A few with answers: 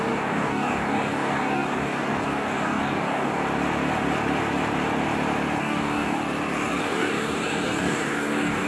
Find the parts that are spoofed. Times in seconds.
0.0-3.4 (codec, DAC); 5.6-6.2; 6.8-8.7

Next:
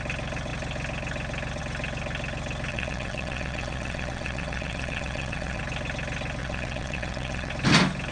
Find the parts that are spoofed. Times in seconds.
2.7-5.6 (vocoder, Vocos); 6.4-7.5

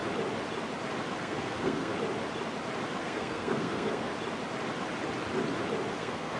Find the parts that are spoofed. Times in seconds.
1.2-1.9 (codec, SNAC); 3.0-4.1; 5.9-6.4